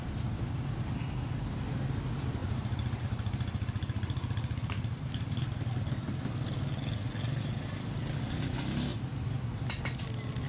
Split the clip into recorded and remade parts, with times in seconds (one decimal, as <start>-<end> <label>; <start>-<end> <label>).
0.0-2.4 recorded; 2.4-3.0 remade; 3.0-8.9 recorded; 8.9-10.1 remade; 10.1-10.5 recorded